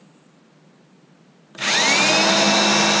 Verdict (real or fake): real